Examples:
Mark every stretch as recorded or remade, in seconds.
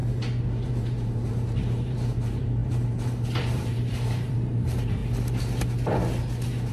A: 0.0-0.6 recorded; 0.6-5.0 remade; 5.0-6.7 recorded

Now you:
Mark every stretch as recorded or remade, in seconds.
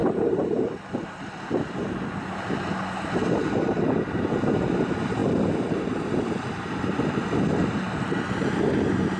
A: 0.0-1.6 remade; 1.6-9.2 recorded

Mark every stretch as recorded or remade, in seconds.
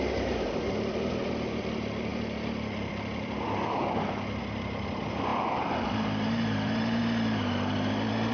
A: 0.0-2.1 recorded; 2.1-4.4 remade; 4.4-5.3 recorded; 5.3-7.0 remade; 7.0-8.3 recorded